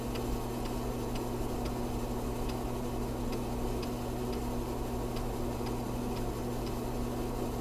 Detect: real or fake real